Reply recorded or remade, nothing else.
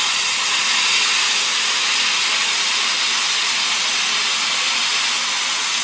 recorded